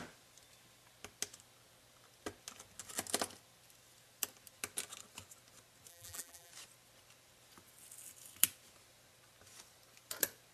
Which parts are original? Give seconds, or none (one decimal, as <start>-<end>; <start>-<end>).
0.0-5.9; 6.5-10.5